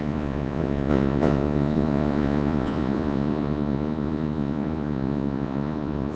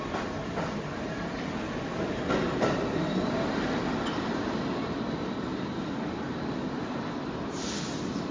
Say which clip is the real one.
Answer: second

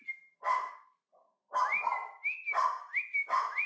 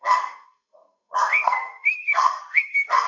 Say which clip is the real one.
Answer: first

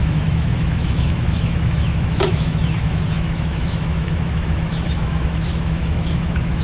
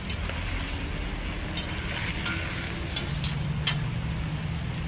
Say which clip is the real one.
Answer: second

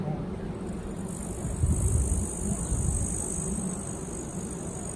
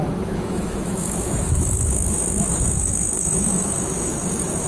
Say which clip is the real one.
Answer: first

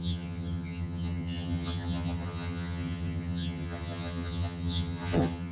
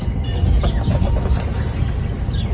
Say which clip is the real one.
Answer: second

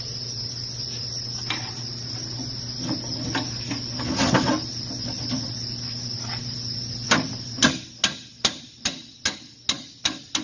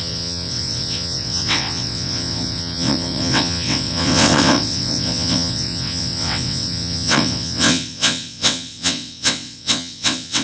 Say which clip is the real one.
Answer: first